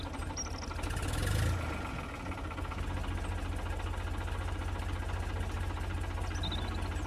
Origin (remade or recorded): recorded